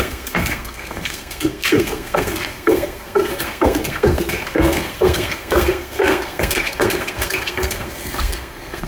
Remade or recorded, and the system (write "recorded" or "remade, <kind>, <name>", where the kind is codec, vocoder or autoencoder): remade, codec, SNAC